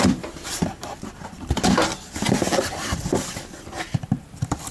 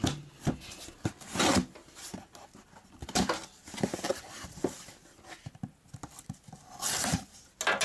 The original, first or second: second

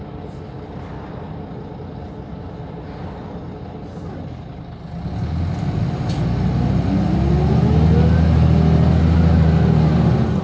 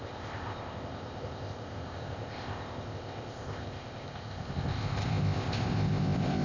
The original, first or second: first